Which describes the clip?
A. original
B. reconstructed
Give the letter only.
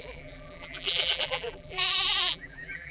B